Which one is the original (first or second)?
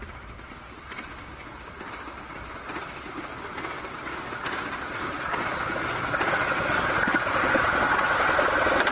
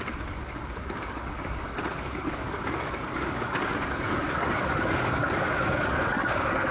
first